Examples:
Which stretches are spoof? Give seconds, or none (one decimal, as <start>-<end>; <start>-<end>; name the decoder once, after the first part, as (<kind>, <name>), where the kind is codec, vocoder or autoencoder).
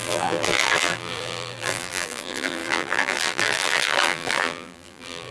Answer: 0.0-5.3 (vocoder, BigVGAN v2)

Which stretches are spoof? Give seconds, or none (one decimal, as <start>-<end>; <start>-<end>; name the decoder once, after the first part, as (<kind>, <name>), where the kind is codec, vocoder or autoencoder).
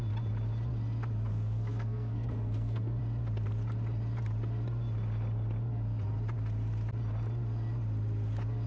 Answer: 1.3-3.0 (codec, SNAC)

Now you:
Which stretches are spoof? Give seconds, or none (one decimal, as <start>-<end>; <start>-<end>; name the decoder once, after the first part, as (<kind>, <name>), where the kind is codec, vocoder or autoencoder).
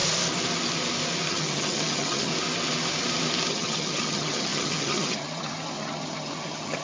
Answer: 1.3-2.3 (vocoder, HiFi-GAN); 3.5-6.8